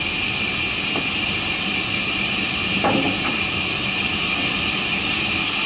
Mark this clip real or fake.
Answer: real